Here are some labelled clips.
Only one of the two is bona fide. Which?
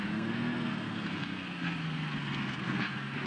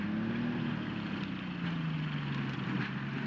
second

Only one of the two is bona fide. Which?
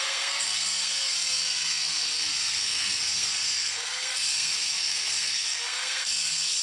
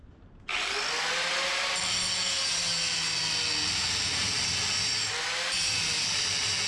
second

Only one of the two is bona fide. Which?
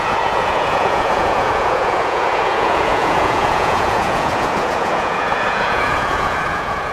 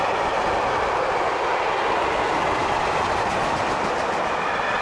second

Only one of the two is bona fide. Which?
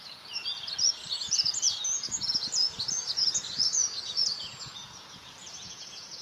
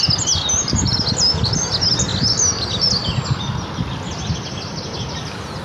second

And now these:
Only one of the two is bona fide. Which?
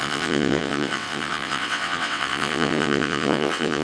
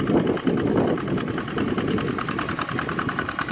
second